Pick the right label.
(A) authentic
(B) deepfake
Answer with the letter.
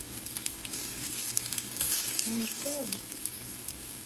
B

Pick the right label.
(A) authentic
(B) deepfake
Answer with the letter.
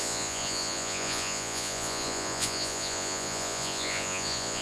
B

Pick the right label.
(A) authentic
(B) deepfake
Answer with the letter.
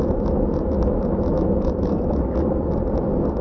A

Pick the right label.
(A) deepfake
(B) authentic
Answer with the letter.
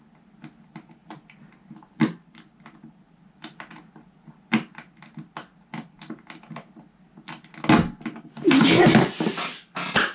B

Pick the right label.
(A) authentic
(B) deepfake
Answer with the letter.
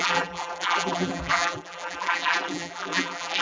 B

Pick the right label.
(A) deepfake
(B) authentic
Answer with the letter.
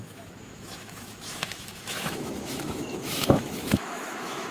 A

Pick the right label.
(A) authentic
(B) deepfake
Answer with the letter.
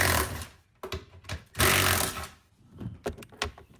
A